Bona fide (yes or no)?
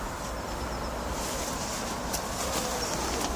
yes